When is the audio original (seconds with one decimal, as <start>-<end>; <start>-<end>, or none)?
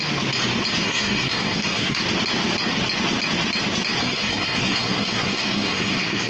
0.0-0.8; 2.0-4.0